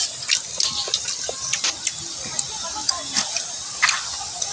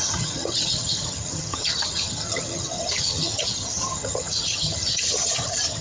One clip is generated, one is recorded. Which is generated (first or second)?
second